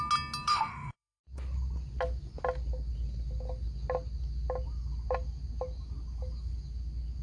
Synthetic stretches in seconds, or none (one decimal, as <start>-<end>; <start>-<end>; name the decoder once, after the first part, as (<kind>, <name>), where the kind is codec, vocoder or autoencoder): 0.5-1.2 (autoencoder, DAC-VAE)